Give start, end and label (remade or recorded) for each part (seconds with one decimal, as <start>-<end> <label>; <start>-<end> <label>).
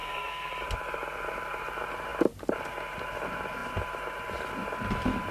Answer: 0.0-0.5 remade; 0.5-5.3 recorded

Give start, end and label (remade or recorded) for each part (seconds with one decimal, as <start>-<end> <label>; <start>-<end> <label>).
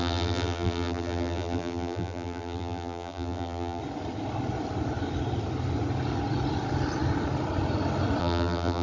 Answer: 0.0-3.8 remade; 3.8-8.2 recorded; 8.2-8.8 remade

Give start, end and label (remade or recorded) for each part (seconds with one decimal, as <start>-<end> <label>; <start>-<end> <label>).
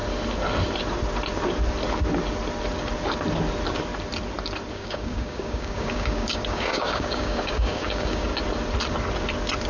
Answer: 0.0-4.7 recorded; 4.7-8.3 remade; 8.3-9.7 recorded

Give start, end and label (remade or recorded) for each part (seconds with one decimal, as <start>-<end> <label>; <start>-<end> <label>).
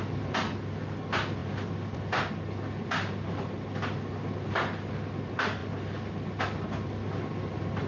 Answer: 0.0-7.9 recorded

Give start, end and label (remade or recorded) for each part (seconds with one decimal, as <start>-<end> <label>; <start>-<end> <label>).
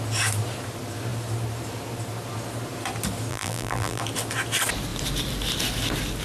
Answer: 0.0-3.3 recorded; 3.3-4.0 remade; 4.0-6.2 recorded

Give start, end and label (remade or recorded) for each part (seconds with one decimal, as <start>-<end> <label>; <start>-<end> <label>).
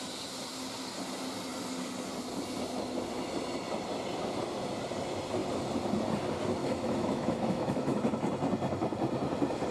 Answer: 0.0-6.6 recorded; 6.6-8.0 remade; 8.0-9.7 recorded